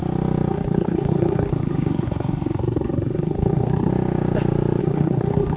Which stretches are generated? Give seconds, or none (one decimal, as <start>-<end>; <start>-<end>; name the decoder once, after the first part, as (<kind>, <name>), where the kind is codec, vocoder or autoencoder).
0.5-3.9 (codec, SNAC); 4.8-5.6